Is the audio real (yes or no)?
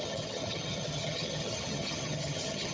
no